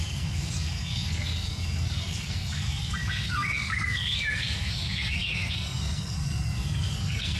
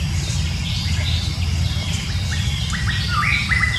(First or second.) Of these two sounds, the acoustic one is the second